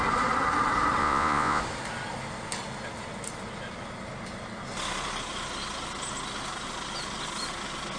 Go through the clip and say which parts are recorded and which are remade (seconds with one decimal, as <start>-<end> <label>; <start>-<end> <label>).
0.0-1.0 recorded; 1.0-1.6 remade; 1.6-8.0 recorded